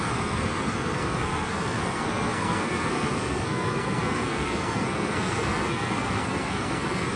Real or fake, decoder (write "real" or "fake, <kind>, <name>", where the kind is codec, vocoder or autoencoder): fake, codec, SNAC